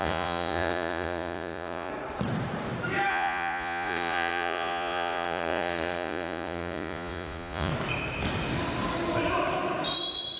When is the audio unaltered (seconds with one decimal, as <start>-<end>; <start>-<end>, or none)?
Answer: 1.9-3.1; 7.7-10.4